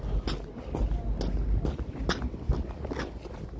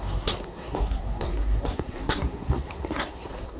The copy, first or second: second